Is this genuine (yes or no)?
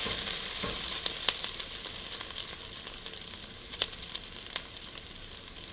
yes